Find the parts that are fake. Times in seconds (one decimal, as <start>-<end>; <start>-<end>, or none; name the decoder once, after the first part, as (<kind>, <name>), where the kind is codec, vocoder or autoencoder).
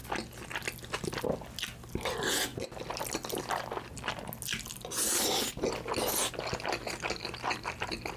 none